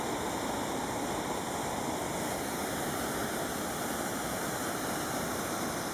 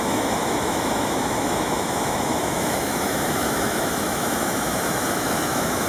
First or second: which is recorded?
first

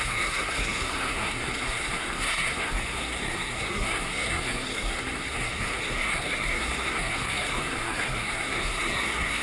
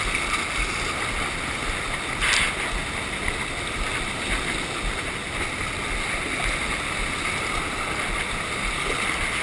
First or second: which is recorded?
second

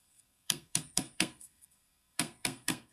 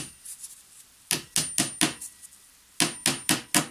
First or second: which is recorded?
second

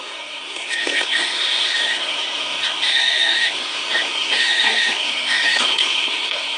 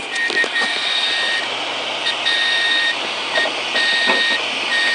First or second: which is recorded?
second